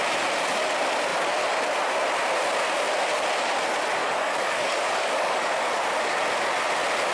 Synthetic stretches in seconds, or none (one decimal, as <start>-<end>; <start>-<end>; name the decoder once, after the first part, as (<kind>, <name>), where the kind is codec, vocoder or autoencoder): 4.0-5.4 (codec, DAC)